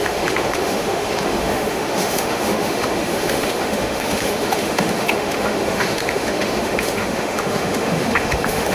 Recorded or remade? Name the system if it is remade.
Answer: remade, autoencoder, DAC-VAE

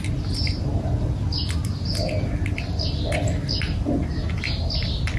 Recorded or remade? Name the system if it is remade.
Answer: recorded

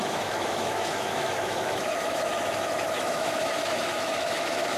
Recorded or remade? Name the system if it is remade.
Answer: remade, autoencoder, DAC-VAE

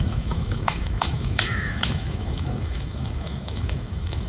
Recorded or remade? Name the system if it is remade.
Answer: remade, autoencoder, DAC-VAE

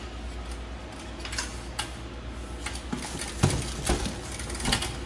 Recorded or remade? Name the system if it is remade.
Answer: recorded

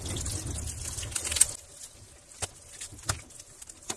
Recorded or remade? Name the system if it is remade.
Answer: recorded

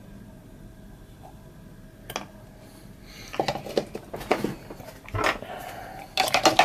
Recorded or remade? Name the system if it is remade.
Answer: recorded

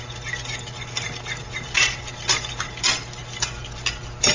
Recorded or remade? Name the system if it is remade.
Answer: recorded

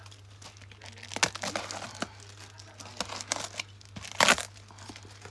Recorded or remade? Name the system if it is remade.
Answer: recorded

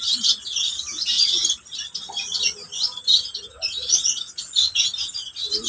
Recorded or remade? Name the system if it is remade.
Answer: recorded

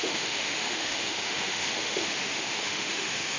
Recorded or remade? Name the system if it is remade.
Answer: remade, autoencoder, DAC-VAE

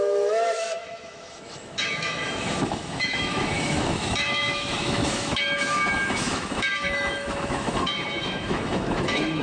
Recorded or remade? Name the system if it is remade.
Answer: remade, autoencoder, DAC-VAE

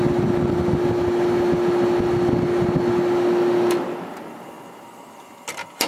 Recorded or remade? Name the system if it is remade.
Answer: recorded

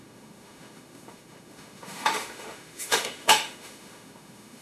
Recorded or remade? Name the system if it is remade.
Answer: remade, autoencoder, DAC-VAE